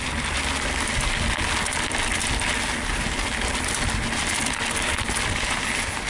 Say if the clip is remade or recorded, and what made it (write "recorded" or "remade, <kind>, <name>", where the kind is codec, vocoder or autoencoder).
recorded